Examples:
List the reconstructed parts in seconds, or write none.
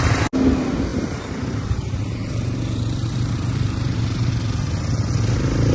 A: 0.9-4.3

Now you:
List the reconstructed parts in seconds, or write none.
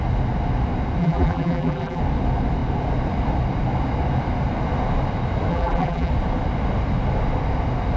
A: 1.0-2.0; 5.5-6.1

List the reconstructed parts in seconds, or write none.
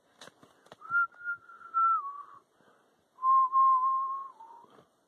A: none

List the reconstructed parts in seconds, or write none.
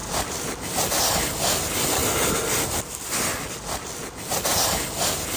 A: 0.0-1.0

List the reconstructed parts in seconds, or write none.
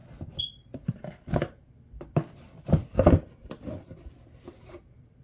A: 3.1-5.2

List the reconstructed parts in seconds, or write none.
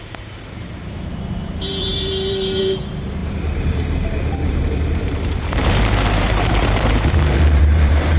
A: 0.0-8.2